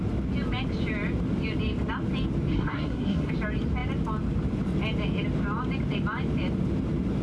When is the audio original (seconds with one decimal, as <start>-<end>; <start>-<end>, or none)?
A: 0.0-2.5; 3.3-7.2